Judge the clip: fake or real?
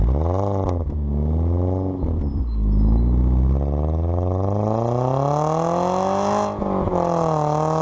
real